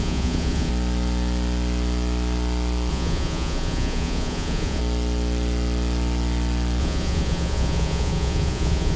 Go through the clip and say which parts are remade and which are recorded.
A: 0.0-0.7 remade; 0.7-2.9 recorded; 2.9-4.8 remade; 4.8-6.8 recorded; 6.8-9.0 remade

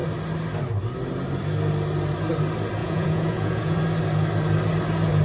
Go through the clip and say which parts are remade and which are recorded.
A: 0.0-2.8 recorded; 2.8-3.8 remade; 3.8-5.2 recorded

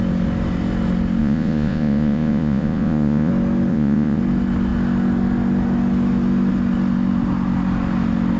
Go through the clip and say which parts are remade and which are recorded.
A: 0.0-1.2 recorded; 1.2-3.3 remade; 3.3-3.7 recorded; 3.7-4.2 remade; 4.2-8.4 recorded

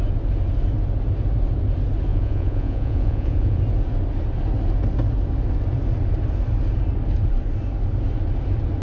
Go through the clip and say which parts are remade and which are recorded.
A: 0.0-2.1 recorded; 2.1-3.6 remade; 3.6-8.8 recorded

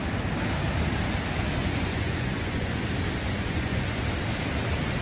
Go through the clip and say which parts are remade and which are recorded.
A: 0.0-1.6 recorded; 1.6-2.8 remade; 2.8-3.2 recorded; 3.2-4.0 remade; 4.0-5.0 recorded

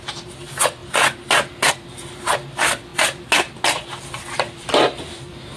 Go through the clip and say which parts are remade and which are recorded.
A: 0.0-5.6 recorded

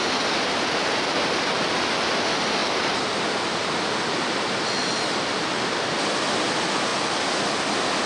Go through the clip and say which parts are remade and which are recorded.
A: 0.0-8.1 recorded